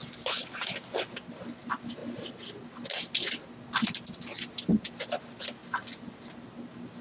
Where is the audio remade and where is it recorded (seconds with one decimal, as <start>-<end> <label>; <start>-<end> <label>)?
0.0-7.0 recorded